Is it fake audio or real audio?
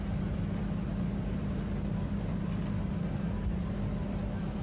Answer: fake